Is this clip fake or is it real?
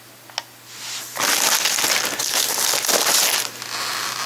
real